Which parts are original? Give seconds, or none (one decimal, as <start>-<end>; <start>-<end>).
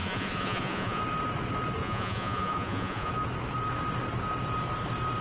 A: 1.0-1.8; 3.1-5.2